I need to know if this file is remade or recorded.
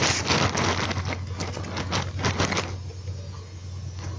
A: recorded